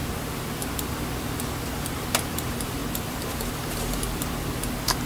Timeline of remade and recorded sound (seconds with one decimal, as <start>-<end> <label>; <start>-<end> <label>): 0.0-5.1 remade